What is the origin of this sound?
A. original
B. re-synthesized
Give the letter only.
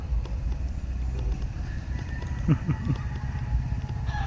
A